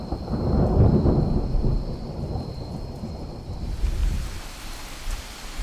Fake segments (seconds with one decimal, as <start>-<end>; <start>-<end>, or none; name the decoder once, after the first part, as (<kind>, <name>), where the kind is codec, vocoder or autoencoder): 4.0-4.6 (vocoder, BigVGAN v2)